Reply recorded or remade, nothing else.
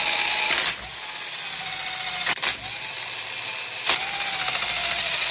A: recorded